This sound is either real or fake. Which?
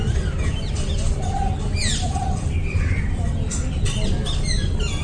real